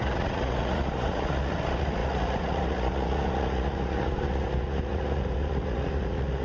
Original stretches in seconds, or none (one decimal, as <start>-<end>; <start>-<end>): none